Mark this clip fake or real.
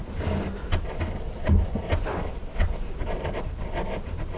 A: real